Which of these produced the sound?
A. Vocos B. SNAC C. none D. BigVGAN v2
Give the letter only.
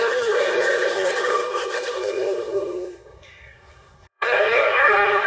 B